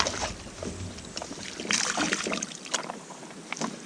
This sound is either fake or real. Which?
real